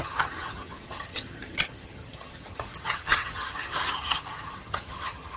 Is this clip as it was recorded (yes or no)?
no